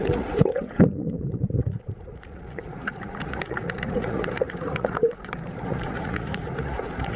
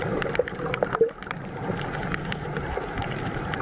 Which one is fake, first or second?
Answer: first